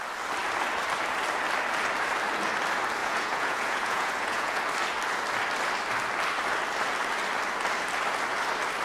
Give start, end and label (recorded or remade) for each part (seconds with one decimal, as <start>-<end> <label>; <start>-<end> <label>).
0.0-3.0 recorded; 3.0-4.6 remade; 4.6-8.8 recorded